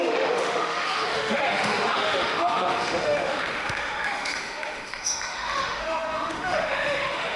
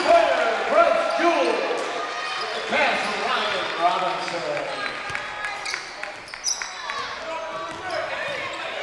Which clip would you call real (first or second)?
second